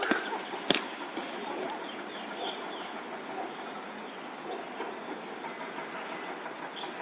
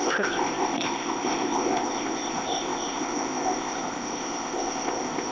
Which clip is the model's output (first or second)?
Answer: second